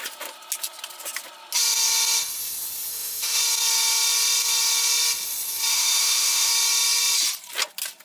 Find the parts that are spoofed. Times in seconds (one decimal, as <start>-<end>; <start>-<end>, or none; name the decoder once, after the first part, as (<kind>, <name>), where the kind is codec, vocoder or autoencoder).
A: 2.9-3.4 (autoencoder, DAC-VAE); 5.7-6.5